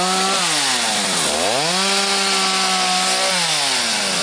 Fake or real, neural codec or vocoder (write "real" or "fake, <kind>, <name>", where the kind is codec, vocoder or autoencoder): real